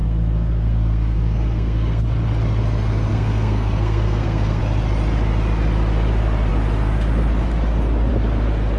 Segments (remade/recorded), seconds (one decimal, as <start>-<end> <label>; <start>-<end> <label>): 0.0-2.0 remade; 2.0-3.1 recorded; 3.1-4.6 remade; 4.6-8.8 recorded